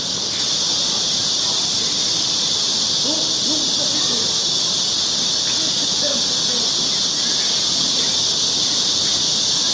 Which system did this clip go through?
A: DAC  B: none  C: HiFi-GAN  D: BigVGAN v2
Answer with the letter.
B